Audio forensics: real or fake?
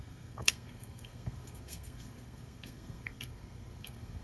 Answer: fake